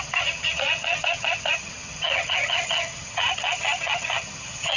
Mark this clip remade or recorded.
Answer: remade